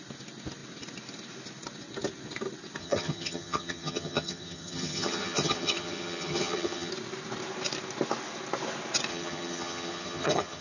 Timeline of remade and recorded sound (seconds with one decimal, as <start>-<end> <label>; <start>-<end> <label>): 0.0-2.8 recorded; 2.8-6.9 remade; 6.9-9.1 recorded; 9.1-10.6 remade